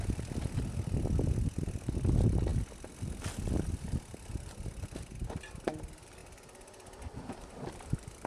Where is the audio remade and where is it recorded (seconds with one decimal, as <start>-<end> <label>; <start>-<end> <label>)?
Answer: 0.0-8.3 recorded